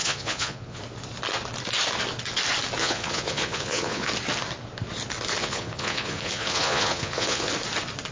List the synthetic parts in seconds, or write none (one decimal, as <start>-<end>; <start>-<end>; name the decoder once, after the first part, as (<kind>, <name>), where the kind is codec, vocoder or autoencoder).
0.0-0.8 (vocoder, Vocos); 2.8-4.1; 5.4-7.5